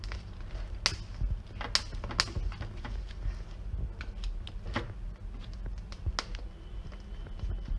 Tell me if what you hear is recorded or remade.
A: recorded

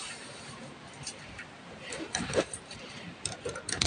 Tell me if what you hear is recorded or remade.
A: remade